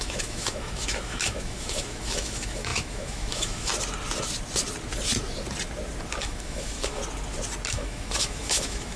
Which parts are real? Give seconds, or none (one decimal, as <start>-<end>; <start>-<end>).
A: 3.7-6.2; 7.0-7.7